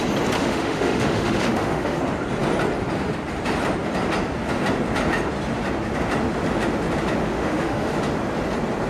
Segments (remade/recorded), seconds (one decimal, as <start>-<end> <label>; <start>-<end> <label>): 0.0-0.4 recorded; 0.4-2.0 remade; 2.0-7.2 recorded; 7.2-7.9 remade; 7.9-8.9 recorded